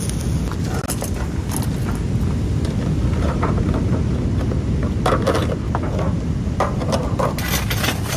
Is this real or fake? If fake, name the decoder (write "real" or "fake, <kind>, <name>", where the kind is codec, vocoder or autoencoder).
real